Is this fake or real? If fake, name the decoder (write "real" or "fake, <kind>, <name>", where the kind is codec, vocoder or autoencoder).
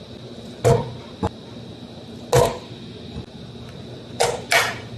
real